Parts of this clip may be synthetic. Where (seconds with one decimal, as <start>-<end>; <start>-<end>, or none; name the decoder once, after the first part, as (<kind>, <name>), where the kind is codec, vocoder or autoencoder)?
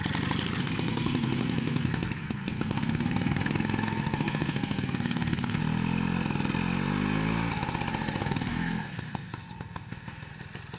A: 0.6-5.6 (codec, SNAC); 8.2-10.3